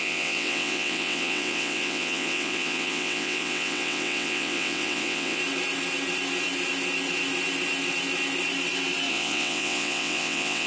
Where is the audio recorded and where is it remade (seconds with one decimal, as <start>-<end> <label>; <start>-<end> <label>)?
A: 0.0-5.4 remade; 5.4-9.1 recorded; 9.1-10.7 remade